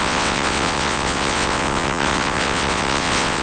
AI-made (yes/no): yes